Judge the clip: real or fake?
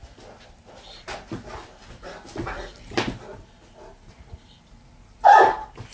real